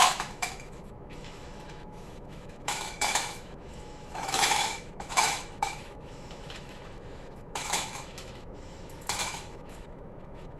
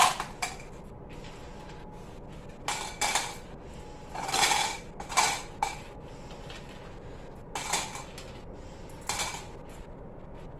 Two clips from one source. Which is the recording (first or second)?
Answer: second